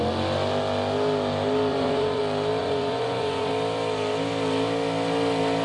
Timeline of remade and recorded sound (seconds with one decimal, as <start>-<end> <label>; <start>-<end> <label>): 0.0-1.7 recorded; 1.7-2.2 remade; 2.2-2.6 recorded; 2.6-3.5 remade; 3.5-5.6 recorded